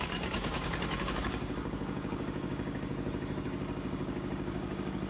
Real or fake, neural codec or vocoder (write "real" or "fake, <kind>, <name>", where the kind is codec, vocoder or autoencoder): fake, codec, DAC